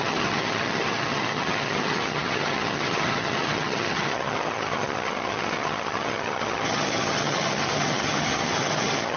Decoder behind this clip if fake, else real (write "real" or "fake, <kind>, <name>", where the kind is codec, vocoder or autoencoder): fake, vocoder, HiFi-GAN